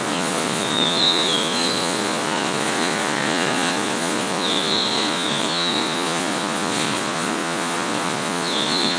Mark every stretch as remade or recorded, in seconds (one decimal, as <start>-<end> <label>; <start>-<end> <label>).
0.0-9.0 remade